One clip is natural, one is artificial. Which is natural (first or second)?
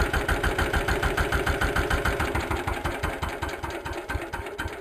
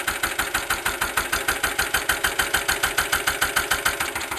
second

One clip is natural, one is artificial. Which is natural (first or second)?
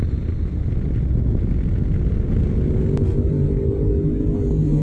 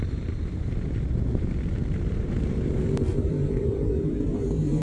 first